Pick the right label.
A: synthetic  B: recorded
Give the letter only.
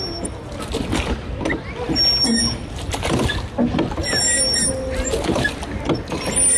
B